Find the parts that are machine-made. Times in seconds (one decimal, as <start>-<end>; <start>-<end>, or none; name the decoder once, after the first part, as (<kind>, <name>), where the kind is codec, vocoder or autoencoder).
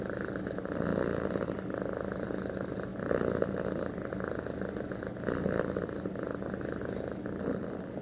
none